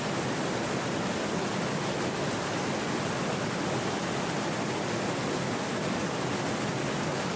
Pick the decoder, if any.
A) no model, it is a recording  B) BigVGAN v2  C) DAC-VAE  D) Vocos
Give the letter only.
A